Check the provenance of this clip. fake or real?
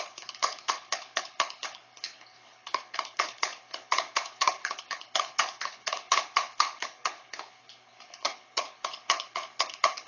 fake